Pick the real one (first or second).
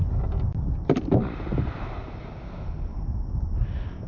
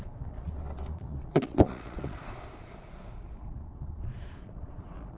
first